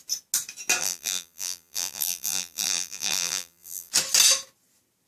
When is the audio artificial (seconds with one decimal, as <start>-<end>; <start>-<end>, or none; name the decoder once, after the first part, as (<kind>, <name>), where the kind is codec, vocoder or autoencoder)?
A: 0.8-3.9 (vocoder, BigVGAN v2)